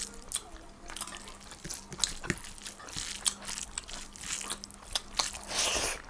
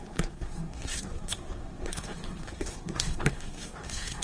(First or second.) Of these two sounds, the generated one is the second